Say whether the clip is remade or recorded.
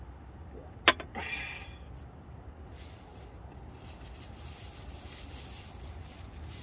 recorded